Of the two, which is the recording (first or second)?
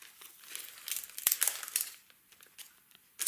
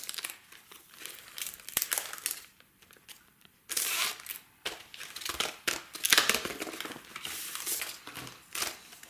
first